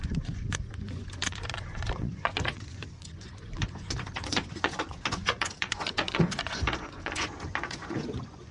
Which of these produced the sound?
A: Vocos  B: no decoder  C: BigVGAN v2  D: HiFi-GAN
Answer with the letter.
A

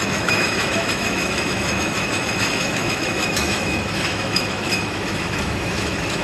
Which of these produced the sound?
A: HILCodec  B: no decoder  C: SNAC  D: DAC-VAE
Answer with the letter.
D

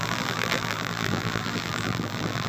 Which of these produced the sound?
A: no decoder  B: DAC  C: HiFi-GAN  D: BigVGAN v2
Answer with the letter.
D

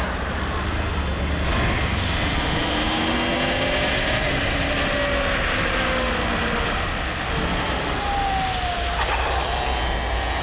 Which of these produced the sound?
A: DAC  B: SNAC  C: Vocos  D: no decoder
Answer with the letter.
D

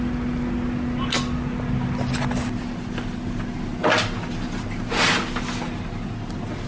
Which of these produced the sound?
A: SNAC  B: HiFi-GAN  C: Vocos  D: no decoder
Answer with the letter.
D